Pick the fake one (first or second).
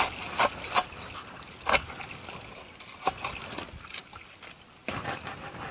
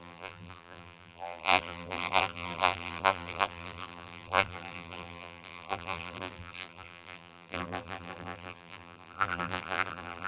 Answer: second